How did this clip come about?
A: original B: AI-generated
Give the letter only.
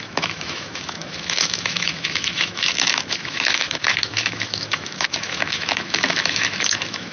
B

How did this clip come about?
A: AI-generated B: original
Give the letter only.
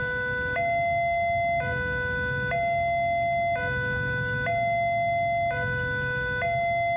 B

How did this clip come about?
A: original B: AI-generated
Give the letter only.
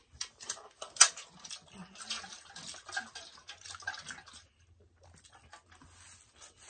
A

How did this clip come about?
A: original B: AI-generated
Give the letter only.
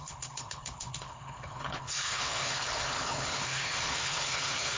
B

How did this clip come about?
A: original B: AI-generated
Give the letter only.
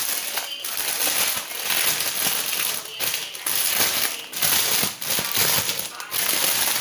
A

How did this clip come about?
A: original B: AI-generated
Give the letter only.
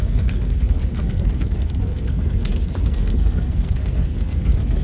B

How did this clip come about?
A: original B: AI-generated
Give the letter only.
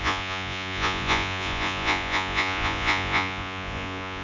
B